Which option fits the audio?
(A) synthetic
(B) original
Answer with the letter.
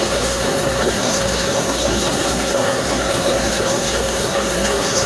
A